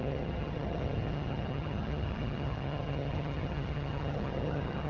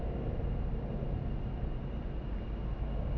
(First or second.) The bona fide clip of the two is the second